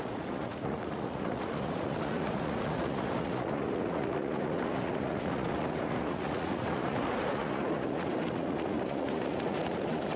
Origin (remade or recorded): remade